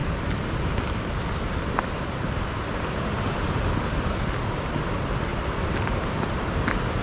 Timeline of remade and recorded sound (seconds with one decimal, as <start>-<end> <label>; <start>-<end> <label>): 0.0-1.5 recorded; 1.5-7.0 remade